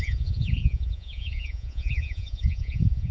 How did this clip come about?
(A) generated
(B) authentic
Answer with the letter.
A